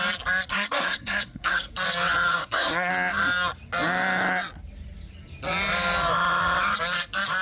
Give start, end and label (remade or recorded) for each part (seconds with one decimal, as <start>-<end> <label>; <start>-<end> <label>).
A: 0.0-0.5 recorded; 0.5-1.7 remade; 1.7-2.3 recorded; 2.3-2.9 remade; 2.9-7.4 recorded